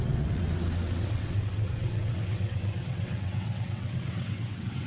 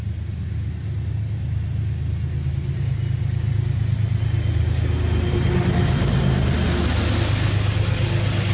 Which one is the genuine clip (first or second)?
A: second